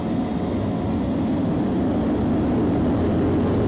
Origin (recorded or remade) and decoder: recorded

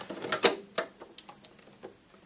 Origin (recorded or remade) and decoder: recorded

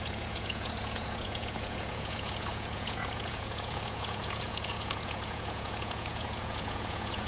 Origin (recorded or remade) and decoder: remade, vocoder, Vocos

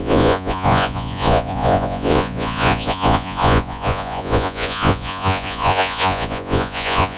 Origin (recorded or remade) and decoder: remade, vocoder, Vocos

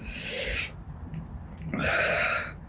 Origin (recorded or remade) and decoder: recorded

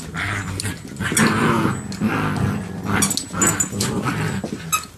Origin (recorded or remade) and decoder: recorded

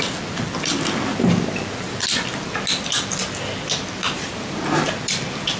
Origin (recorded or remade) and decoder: recorded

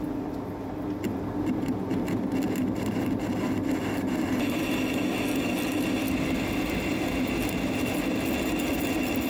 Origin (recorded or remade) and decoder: recorded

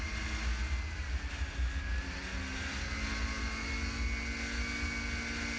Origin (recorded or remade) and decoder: recorded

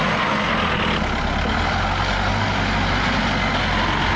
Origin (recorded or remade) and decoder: recorded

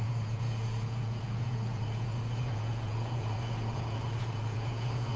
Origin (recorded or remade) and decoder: remade, vocoder, Vocos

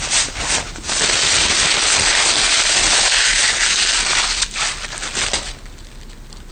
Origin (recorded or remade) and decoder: recorded